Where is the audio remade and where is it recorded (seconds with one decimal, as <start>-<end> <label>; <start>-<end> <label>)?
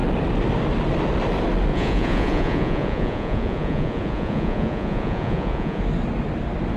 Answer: 0.0-1.7 recorded; 1.7-5.8 remade; 5.8-6.8 recorded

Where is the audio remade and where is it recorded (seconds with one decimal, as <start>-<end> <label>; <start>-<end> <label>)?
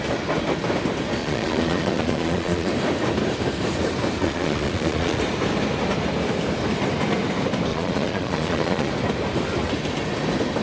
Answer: 0.0-1.2 recorded; 1.2-2.7 remade; 2.7-4.2 recorded; 4.2-5.2 remade; 5.2-7.7 recorded; 7.7-8.9 remade; 8.9-10.6 recorded